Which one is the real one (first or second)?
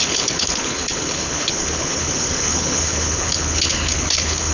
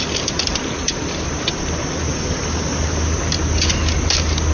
second